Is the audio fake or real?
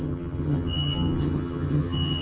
fake